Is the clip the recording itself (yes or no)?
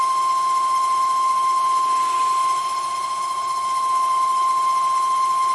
yes